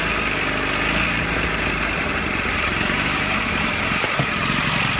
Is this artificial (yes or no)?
no